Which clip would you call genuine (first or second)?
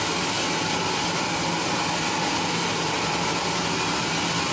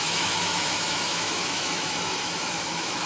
first